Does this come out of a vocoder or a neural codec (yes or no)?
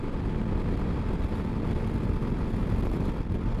no